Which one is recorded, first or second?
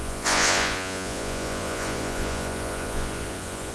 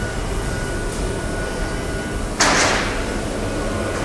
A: second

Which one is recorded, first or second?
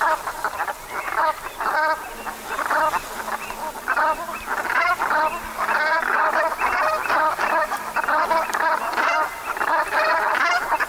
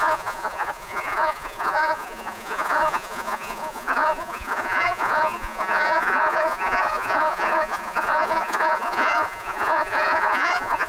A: first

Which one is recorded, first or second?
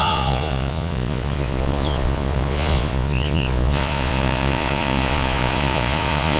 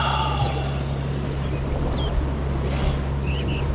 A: second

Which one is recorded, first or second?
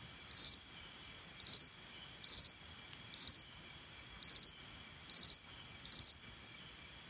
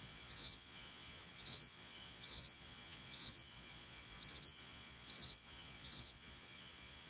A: first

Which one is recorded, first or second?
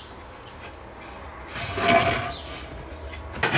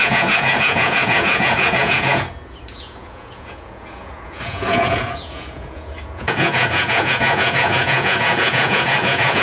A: first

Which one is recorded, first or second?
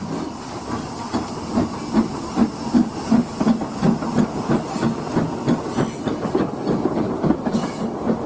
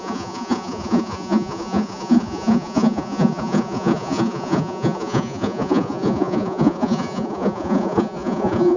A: first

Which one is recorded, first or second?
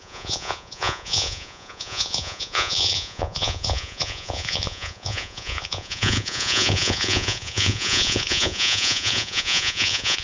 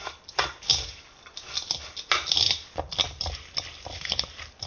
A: second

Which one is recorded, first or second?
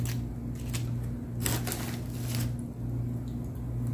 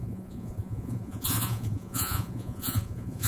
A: first